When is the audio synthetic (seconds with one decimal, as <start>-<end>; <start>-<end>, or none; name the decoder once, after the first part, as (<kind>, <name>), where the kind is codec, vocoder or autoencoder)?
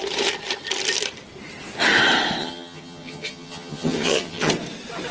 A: 2.4-4.5 (vocoder, HiFi-GAN)